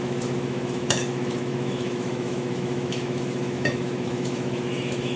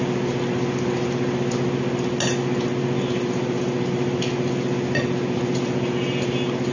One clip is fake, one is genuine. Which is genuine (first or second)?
second